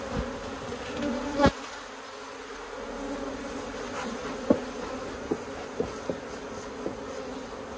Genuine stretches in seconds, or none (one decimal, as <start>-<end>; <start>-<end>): 0.0-7.8